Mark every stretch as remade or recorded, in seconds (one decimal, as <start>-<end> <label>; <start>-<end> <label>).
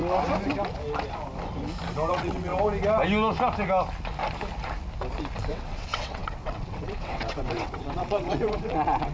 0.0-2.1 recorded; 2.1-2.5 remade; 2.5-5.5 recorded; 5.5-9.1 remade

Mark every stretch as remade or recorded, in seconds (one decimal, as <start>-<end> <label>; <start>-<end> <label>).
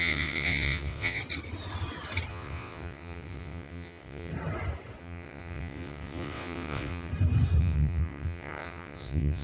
0.0-1.2 remade; 1.2-2.3 recorded; 2.3-4.3 remade; 4.3-5.0 recorded; 5.0-7.1 remade; 7.1-7.6 recorded; 7.6-9.4 remade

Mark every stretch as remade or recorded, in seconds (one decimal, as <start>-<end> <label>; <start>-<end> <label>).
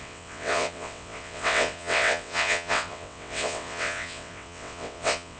0.0-5.4 remade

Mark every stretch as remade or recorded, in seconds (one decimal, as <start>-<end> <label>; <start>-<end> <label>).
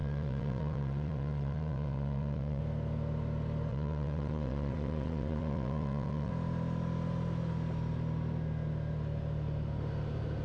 0.0-2.6 remade; 2.6-3.7 recorded; 3.7-6.3 remade; 6.3-10.4 recorded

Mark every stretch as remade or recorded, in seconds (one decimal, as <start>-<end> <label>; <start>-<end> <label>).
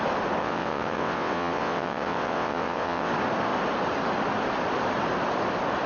0.0-0.4 recorded; 0.4-3.1 remade; 3.1-5.9 recorded